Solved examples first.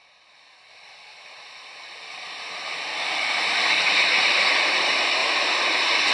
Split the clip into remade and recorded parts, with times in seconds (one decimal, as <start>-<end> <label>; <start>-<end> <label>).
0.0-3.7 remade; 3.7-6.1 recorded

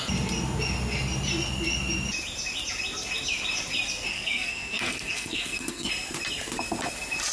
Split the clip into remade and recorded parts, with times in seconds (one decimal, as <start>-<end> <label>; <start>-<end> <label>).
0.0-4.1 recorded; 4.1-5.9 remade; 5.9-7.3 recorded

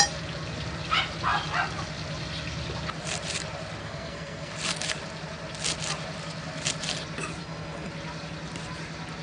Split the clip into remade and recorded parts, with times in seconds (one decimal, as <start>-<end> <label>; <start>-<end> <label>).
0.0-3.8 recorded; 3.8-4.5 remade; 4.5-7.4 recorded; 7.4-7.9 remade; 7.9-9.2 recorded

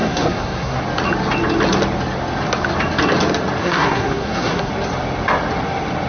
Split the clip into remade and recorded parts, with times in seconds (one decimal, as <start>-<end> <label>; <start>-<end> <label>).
0.0-0.8 remade; 0.8-3.6 recorded; 3.6-4.7 remade; 4.7-6.1 recorded

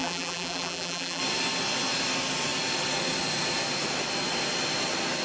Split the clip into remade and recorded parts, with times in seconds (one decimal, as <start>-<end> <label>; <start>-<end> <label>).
0.0-1.2 remade; 1.2-5.2 recorded

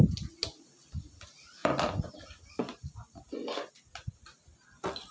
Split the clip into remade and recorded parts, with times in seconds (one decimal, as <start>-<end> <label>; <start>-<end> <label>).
0.0-5.1 recorded

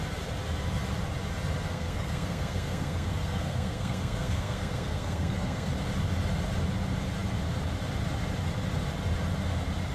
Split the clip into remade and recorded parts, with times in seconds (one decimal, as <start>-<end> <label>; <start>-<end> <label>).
0.0-1.7 recorded; 1.7-5.7 remade; 5.7-9.9 recorded

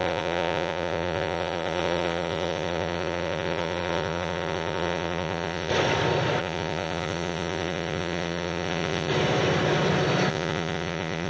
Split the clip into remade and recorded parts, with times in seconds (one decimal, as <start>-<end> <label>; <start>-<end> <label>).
0.0-5.7 remade; 5.7-6.4 recorded; 6.4-9.1 remade; 9.1-10.3 recorded; 10.3-11.3 remade